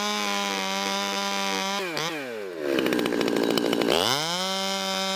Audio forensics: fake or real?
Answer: real